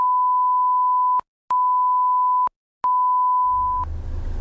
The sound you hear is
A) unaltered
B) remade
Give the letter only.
A